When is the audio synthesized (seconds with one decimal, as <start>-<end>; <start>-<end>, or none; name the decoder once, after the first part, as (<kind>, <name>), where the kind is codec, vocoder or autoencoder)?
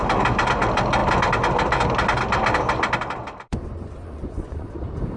3.5-4.7 (vocoder, Vocos)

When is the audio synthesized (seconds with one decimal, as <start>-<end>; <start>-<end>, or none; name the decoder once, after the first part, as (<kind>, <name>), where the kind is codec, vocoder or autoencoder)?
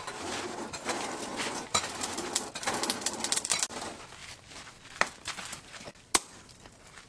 1.3-1.8 (vocoder, Vocos)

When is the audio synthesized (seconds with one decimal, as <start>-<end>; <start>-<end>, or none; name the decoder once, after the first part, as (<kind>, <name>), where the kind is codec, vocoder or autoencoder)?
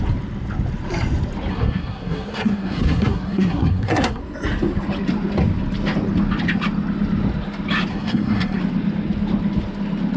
1.5-4.2 (codec, SNAC); 7.9-8.6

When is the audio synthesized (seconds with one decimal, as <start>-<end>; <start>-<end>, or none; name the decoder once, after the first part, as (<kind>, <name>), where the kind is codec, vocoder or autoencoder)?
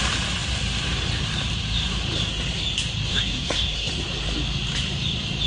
3.1-3.9 (codec, SNAC)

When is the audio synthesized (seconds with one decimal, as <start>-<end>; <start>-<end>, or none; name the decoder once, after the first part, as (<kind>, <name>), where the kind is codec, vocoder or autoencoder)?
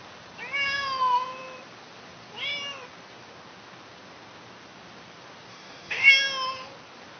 5.5-6.1 (codec, DAC)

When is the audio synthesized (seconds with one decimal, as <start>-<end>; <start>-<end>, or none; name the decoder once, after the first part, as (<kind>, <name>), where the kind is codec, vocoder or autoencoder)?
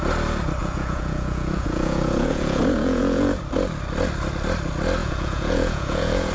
0.6-3.4 (vocoder, Vocos); 5.0-6.3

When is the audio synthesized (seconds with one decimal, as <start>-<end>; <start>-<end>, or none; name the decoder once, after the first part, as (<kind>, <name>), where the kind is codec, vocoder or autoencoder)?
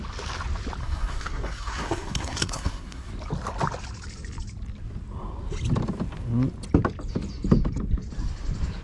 0.8-3.1 (codec, SNAC)